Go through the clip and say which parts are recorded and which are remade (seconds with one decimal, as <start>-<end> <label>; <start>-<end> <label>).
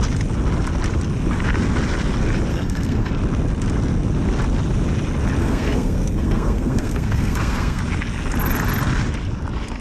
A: 0.0-2.5 recorded; 2.5-3.1 remade; 3.1-5.4 recorded; 5.4-7.8 remade; 7.8-9.8 recorded